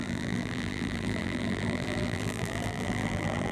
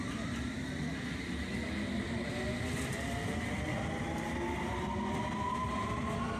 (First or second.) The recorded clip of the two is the second